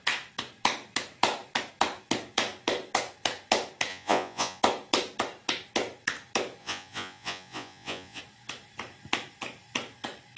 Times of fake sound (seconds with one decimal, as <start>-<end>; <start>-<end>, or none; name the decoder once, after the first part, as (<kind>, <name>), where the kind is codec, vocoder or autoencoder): 3.9-4.6 (vocoder, Vocos); 6.6-8.2